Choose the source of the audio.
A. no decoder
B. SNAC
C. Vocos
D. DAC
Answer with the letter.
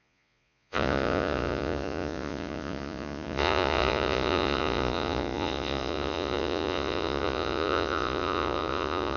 C